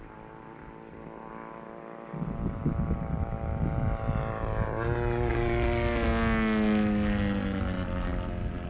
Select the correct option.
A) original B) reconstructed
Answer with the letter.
A